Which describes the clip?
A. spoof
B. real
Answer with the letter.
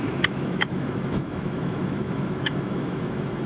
A